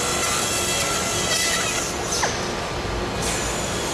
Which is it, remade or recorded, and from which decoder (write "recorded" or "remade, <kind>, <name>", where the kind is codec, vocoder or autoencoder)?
recorded